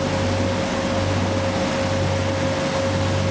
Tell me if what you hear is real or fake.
real